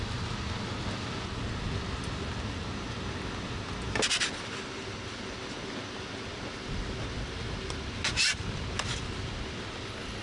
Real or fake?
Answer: real